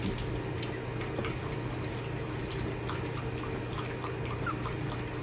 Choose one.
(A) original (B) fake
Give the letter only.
A